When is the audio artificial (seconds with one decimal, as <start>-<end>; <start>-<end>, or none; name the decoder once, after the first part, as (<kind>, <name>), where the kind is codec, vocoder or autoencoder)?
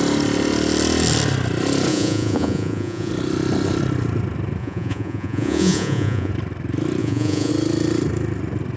1.9-3.1 (vocoder, Vocos); 4.6-6.3; 7.0-7.5